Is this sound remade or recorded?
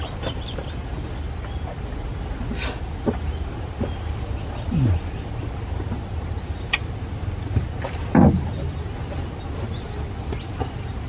recorded